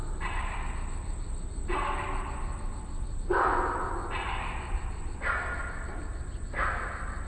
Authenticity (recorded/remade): recorded